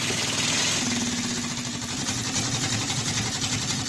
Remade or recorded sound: recorded